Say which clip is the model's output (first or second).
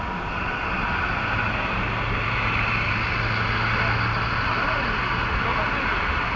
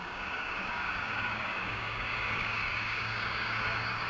second